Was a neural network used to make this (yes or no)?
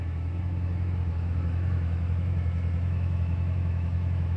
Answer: yes